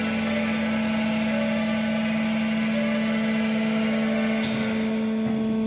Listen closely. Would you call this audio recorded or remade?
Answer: recorded